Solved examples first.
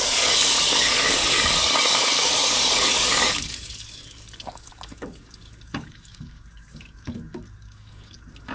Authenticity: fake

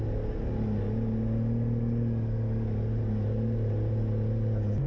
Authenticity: real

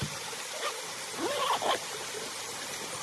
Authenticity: real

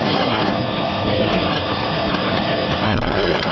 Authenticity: fake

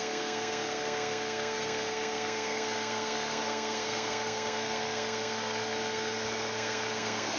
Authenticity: fake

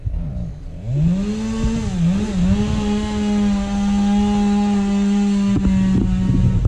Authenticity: real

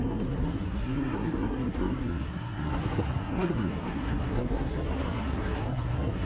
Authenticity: fake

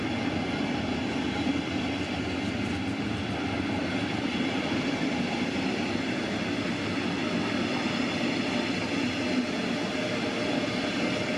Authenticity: real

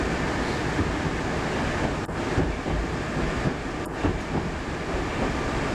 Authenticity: real